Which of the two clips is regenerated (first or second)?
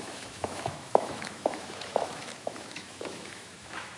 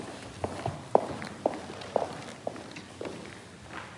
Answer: first